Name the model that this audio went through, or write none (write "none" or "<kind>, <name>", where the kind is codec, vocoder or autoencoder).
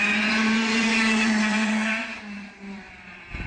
vocoder, BigVGAN v2